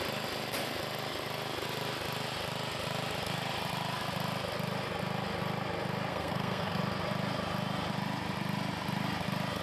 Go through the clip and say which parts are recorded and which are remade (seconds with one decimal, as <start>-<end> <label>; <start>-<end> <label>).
0.0-6.1 recorded; 6.1-6.8 remade; 6.8-9.6 recorded